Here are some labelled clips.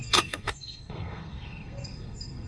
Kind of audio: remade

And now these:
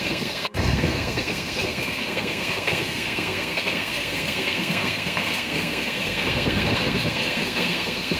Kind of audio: remade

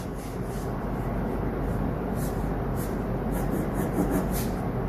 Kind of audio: recorded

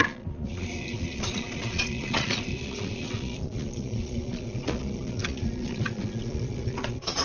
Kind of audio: remade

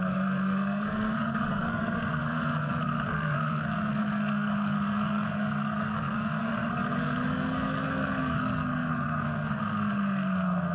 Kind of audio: remade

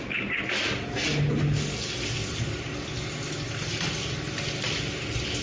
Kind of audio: recorded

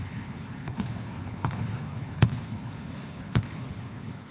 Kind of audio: remade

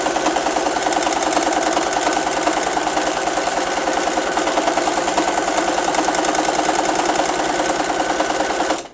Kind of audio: recorded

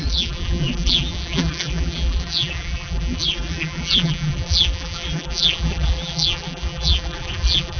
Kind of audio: remade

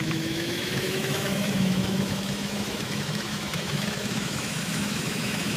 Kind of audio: remade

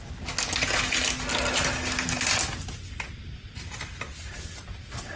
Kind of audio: recorded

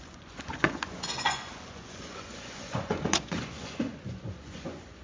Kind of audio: remade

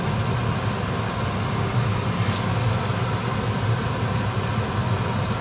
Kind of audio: recorded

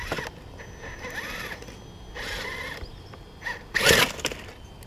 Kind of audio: recorded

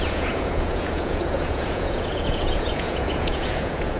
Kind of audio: remade